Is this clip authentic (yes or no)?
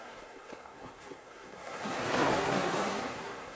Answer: no